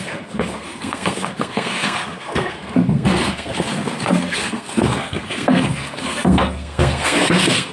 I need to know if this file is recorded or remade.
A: remade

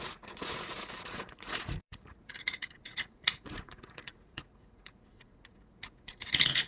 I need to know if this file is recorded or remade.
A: remade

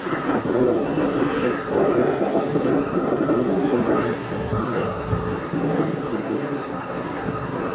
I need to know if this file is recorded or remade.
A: remade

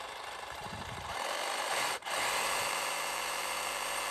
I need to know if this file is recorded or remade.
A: remade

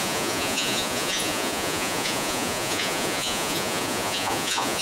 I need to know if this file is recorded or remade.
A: remade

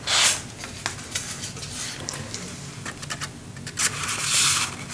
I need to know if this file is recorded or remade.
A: recorded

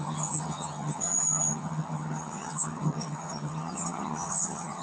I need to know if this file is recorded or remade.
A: remade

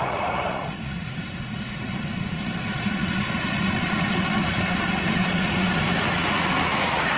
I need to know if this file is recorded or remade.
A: remade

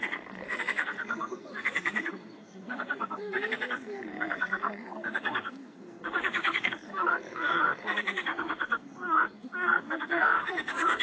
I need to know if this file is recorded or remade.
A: remade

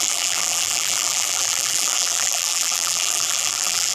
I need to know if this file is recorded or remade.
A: remade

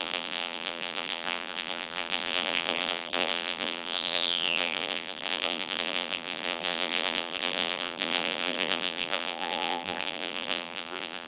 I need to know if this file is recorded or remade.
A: remade